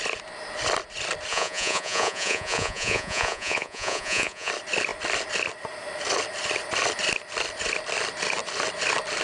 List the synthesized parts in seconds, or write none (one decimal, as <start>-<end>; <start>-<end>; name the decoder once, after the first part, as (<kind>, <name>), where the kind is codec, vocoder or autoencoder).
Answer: 1.3-4.5 (vocoder, Vocos)